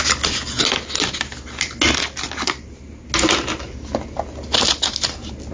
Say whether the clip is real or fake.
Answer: real